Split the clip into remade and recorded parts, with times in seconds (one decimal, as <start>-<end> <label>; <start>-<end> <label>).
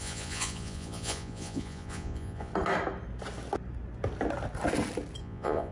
0.0-2.5 remade; 2.5-5.2 recorded; 5.2-5.7 remade